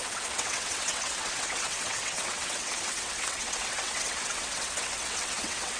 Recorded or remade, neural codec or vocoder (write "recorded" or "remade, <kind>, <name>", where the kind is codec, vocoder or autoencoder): remade, vocoder, WaveNeXt